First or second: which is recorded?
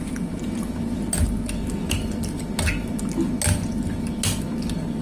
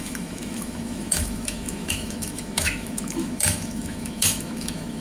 first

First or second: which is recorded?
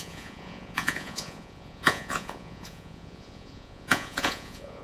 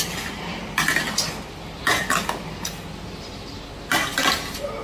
second